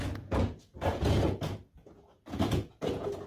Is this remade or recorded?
remade